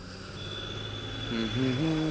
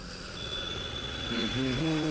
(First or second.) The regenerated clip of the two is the second